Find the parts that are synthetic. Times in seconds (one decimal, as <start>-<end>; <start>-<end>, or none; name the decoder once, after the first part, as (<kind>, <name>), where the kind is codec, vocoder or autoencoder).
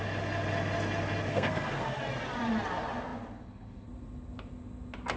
1.3-2.0 (codec, SNAC)